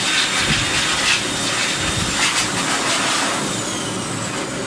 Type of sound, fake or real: real